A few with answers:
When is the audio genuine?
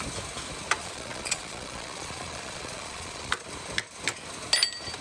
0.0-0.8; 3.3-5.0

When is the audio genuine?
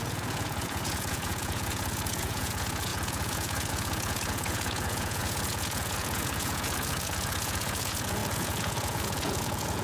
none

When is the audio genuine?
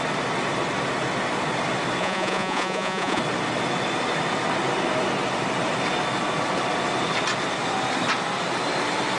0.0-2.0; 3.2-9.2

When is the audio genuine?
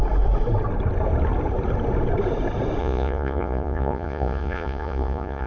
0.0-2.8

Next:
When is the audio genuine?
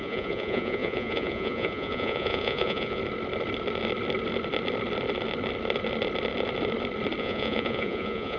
3.0-7.2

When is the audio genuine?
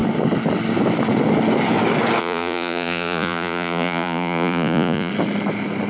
0.0-2.2; 5.1-5.9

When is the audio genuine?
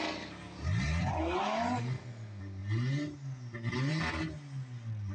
0.0-5.1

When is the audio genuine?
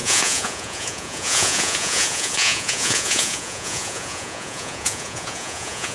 none